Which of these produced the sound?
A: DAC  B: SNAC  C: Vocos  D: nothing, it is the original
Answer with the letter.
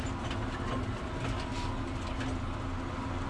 D